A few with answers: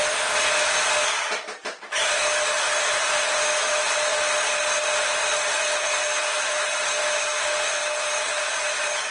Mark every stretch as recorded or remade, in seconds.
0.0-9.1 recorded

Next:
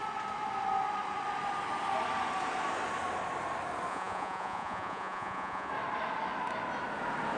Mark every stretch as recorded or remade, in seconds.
0.0-3.9 recorded; 3.9-5.7 remade; 5.7-7.4 recorded

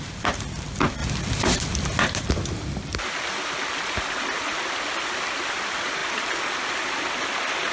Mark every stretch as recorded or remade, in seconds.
0.0-7.7 recorded

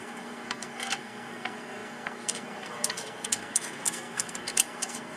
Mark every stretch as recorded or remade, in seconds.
0.0-5.2 remade